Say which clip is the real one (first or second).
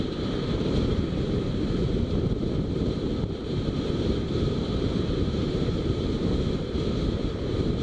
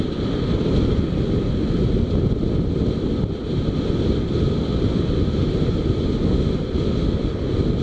second